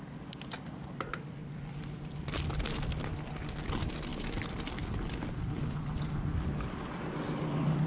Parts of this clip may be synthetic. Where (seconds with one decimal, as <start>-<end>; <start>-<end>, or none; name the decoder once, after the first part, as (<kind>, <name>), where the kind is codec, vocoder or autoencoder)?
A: none